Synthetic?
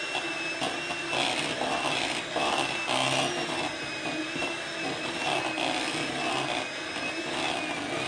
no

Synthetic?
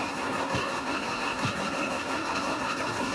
yes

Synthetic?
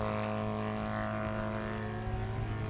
no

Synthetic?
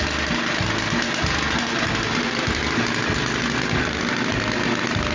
no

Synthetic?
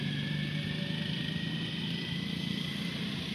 no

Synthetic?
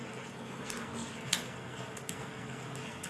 yes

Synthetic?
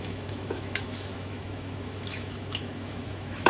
yes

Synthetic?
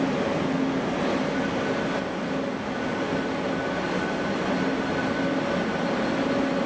no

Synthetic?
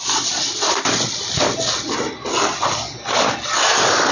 no